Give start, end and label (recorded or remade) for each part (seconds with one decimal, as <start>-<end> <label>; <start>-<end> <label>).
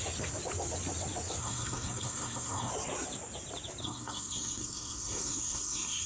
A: 0.0-1.4 recorded; 1.4-2.7 remade; 2.7-3.8 recorded; 3.8-6.1 remade